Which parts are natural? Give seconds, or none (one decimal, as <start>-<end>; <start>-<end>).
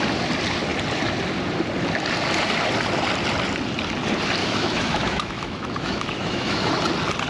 0.0-4.4; 6.7-7.3